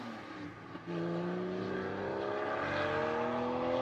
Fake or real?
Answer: real